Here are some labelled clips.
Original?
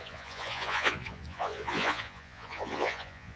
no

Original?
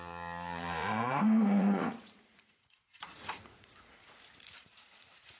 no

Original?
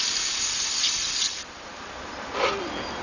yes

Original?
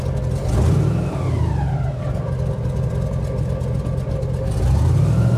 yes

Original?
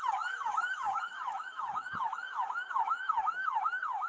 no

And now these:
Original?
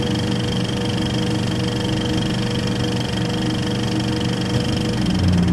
yes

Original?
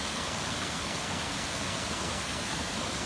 no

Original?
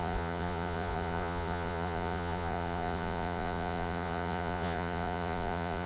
no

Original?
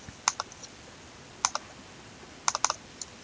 yes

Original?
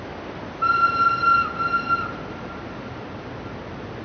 yes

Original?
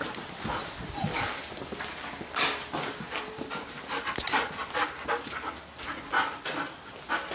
yes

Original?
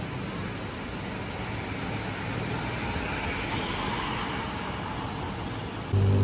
yes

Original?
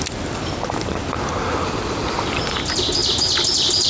yes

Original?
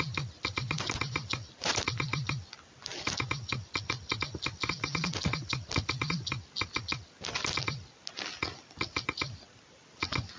yes